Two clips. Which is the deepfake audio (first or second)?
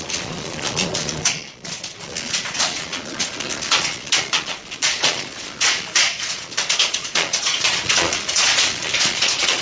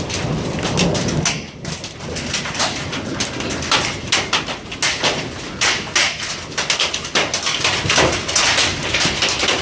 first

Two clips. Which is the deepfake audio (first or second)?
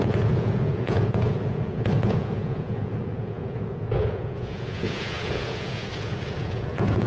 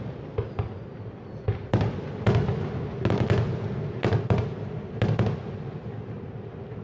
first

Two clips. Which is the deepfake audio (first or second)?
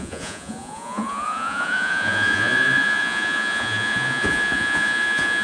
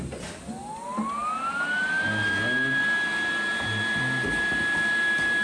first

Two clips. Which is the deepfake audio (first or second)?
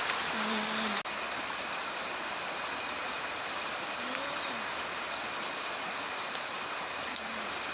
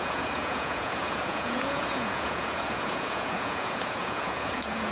second